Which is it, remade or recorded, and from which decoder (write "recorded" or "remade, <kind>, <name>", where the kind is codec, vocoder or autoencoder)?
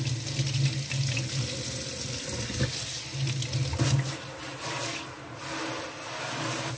recorded